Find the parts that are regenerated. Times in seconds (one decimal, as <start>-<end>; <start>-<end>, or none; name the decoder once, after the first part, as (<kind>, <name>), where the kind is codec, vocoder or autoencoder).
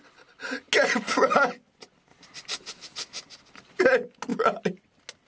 none